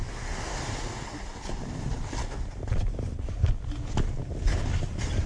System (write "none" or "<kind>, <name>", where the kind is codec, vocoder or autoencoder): none